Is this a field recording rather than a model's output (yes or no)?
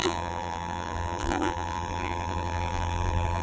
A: no